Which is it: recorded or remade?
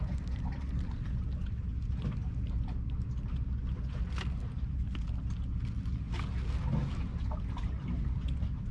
recorded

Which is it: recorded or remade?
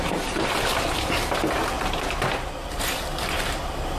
remade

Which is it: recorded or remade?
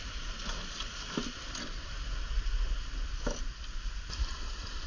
recorded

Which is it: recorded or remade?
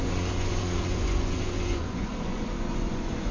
remade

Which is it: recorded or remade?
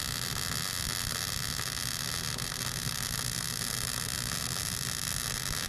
recorded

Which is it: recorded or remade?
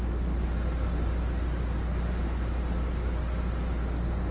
recorded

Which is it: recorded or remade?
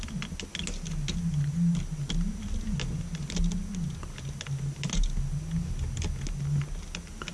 recorded